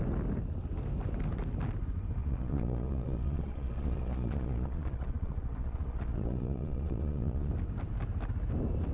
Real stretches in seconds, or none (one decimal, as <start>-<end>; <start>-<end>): 0.0-2.2; 7.5-8.9